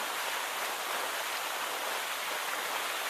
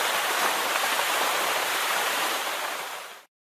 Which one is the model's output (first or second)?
second